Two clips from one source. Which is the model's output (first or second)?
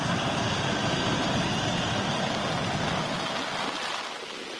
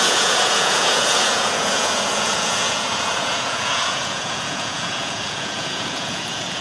second